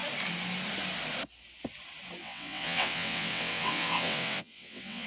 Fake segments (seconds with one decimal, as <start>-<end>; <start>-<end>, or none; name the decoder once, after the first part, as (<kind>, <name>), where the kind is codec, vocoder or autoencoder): 2.2-5.1 (vocoder, WaveNeXt)